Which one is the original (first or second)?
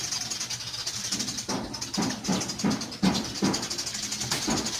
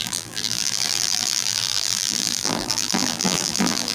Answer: first